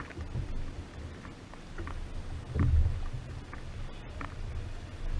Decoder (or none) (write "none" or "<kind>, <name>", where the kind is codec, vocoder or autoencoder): none